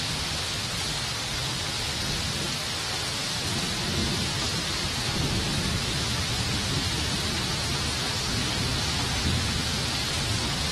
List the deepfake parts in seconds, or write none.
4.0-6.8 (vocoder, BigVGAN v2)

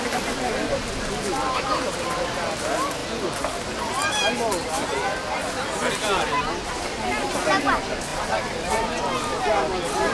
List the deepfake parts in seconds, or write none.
8.1-9.0 (vocoder, BigVGAN v2)

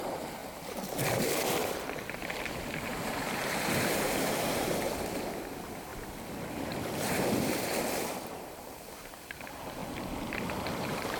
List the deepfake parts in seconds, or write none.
0.0-5.9 (vocoder, BigVGAN v2); 6.6-9.8; 10.5-11.2

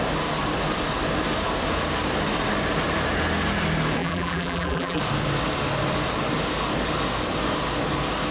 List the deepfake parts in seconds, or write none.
4.0-5.0 (vocoder, BigVGAN v2)

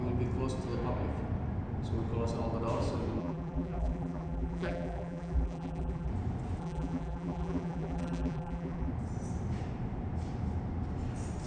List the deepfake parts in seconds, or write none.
3.2-6.1 (vocoder, BigVGAN v2); 6.6-8.9

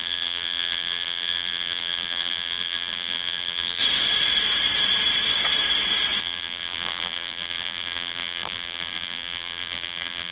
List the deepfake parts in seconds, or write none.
0.0-3.8 (vocoder, BigVGAN v2); 6.2-10.3